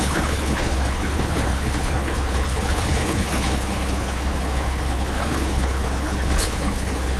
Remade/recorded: remade